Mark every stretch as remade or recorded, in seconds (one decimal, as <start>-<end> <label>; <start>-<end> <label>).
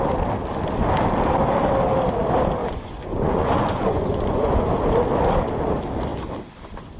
0.0-2.6 recorded; 2.6-4.7 remade; 4.7-7.0 recorded